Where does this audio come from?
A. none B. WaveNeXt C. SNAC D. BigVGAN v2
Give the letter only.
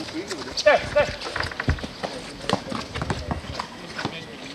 A